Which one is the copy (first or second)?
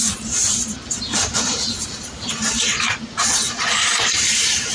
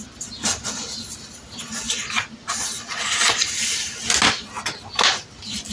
first